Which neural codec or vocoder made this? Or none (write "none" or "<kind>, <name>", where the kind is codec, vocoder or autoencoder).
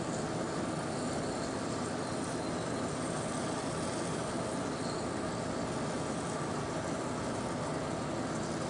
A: none